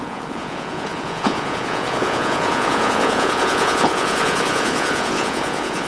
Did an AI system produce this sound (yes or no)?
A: yes